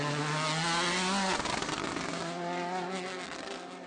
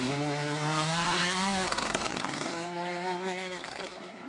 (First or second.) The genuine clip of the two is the first